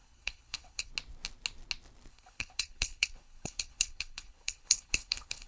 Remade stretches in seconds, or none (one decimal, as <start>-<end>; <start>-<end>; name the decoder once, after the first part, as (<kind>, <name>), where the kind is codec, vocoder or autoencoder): 0.0-0.9 (codec, HILCodec); 2.1-5.5